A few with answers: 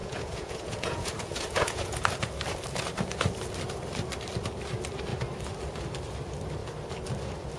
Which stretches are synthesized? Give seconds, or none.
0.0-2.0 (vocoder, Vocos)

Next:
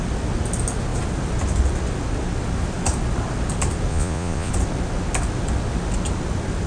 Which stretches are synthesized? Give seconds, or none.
3.9-4.5 (vocoder, Vocos)

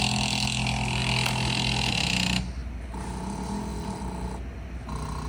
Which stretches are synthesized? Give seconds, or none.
none

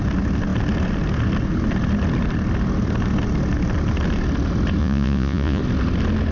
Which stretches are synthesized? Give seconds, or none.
4.8-5.6 (vocoder, Vocos)

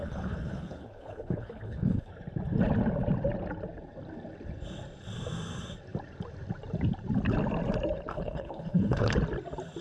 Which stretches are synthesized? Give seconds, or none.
0.0-2.1 (codec, HILCodec); 8.1-9.2